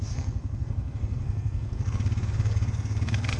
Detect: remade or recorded remade